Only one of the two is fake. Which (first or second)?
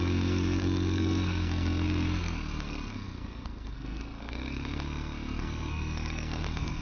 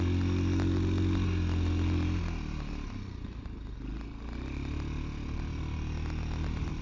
first